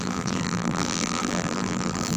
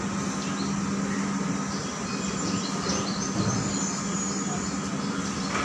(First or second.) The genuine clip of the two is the second